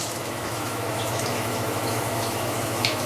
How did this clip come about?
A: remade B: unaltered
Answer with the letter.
A